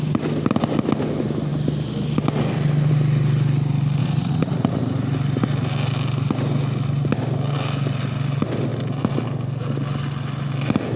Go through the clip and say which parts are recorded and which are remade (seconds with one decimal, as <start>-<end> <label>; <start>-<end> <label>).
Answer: 0.0-4.0 recorded; 4.0-4.8 remade; 4.8-11.0 recorded